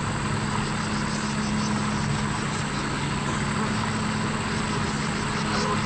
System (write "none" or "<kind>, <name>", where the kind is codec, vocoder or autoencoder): none